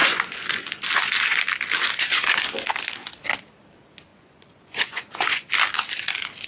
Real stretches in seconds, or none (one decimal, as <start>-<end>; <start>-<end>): 0.8-4.1; 5.5-6.5